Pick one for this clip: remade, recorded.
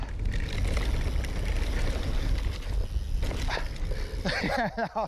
recorded